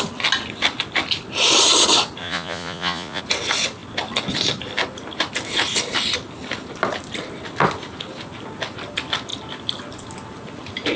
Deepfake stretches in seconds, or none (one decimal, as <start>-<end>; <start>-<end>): 2.2-3.2

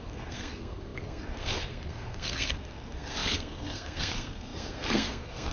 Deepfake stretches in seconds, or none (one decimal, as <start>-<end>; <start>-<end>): 0.0-5.5

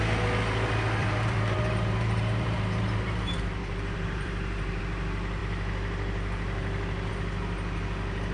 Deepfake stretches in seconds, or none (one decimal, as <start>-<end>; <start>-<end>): 1.0-4.8

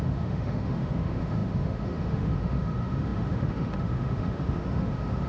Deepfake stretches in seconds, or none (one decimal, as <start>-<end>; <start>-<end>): 0.0-5.3

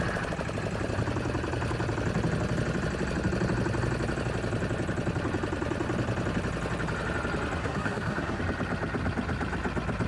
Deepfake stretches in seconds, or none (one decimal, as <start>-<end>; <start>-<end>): 7.6-8.4

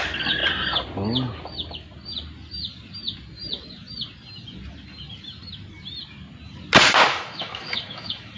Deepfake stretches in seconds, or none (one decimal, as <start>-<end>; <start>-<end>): 7.1-8.4

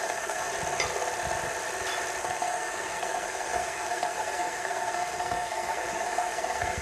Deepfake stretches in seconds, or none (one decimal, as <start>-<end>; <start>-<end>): 0.0-0.5; 2.2-6.8

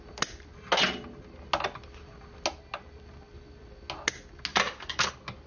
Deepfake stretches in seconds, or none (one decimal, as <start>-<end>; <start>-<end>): 4.5-5.1